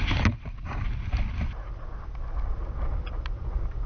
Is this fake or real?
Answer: real